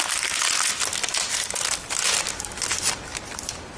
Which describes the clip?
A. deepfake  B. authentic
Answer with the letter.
B